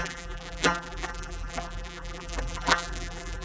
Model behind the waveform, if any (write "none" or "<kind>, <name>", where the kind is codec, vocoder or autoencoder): vocoder, BigVGAN v2